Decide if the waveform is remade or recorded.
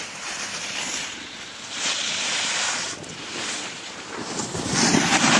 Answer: remade